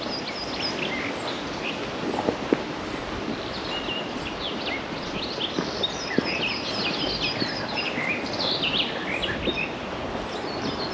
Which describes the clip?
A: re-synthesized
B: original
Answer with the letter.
B